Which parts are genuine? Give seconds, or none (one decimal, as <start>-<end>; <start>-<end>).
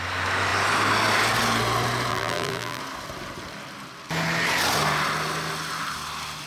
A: 0.0-2.1; 2.8-6.5